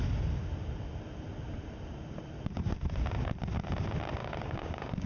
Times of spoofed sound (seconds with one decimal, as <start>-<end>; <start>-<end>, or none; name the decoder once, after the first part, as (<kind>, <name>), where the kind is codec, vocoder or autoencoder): 4.2-5.1 (codec, DAC)